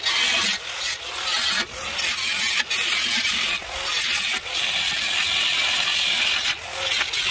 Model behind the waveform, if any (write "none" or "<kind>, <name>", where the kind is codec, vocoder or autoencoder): none